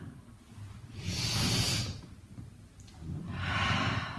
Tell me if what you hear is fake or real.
real